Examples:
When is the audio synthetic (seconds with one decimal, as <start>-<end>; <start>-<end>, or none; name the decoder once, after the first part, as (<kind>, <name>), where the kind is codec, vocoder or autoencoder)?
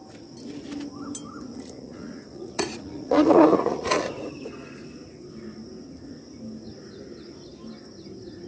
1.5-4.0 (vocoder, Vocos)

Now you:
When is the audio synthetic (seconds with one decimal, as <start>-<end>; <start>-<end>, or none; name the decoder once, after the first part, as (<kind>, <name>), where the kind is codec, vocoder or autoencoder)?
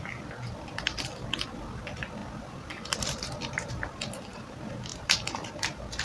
none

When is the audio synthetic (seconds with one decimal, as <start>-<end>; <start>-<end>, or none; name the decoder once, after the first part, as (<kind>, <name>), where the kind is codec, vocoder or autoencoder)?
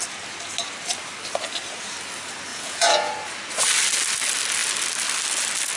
2.5-3.1 (vocoder, Vocos)